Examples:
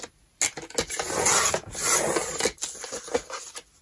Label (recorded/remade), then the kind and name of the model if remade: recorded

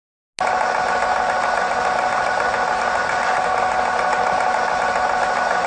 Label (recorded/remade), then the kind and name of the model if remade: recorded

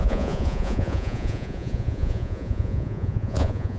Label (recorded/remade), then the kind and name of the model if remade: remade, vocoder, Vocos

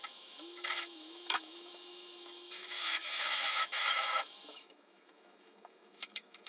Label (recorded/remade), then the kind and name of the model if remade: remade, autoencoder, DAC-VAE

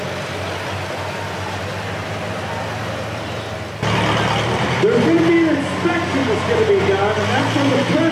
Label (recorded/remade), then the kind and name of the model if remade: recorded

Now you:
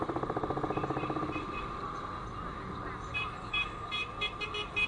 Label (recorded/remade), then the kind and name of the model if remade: recorded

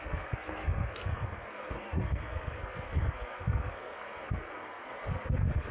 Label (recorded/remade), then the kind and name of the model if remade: remade, codec, SNAC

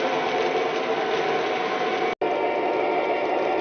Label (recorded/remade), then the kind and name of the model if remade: recorded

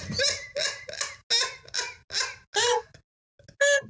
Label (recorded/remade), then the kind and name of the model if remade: recorded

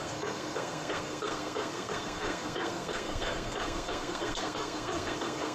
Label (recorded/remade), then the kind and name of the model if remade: remade, codec, SNAC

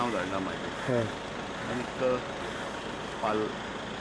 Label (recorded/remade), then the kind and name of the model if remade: recorded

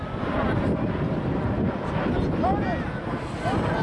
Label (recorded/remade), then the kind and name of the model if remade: recorded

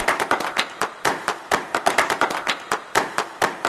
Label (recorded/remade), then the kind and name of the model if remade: remade, vocoder, BigVGAN v2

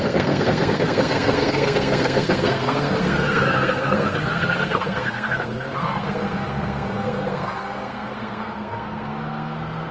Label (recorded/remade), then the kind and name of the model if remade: remade, codec, SNAC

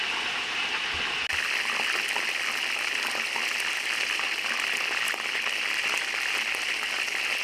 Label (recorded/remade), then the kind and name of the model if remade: recorded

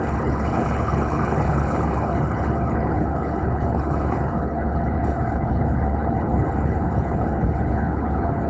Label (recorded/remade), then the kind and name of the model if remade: remade, codec, HILCodec